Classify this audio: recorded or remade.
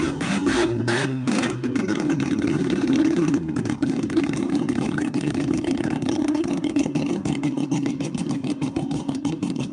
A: remade